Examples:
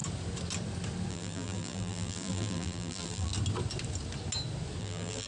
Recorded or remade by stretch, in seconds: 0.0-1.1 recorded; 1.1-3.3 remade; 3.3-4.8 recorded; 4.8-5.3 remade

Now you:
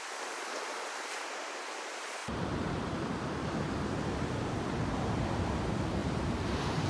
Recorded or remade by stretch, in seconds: 0.0-6.0 recorded; 6.0-6.9 remade

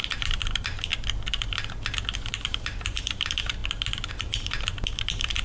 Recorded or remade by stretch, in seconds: 0.0-0.9 remade; 0.9-2.3 recorded; 2.3-3.6 remade; 3.6-4.1 recorded; 4.1-5.4 remade

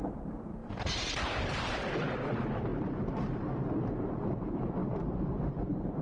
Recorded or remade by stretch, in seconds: 0.0-2.7 remade; 2.7-4.0 recorded; 4.0-4.8 remade; 4.8-5.4 recorded; 5.4-6.0 remade